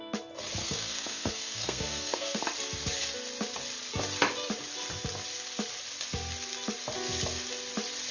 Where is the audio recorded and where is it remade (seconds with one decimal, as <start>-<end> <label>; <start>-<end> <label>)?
0.0-0.6 recorded; 0.6-2.4 remade; 2.4-8.1 recorded